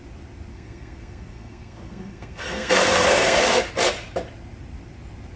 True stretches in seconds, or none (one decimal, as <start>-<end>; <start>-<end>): 0.0-0.5; 3.7-5.4